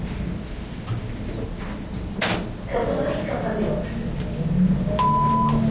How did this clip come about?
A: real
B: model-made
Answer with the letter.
A